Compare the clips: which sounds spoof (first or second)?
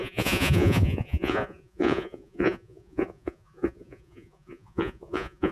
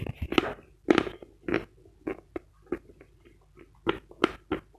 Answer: first